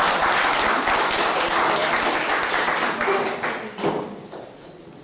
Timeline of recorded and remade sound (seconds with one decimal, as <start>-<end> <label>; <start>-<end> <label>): 0.0-5.0 remade